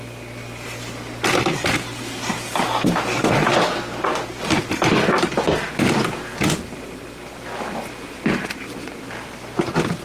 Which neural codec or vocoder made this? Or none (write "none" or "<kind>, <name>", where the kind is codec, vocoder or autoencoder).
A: none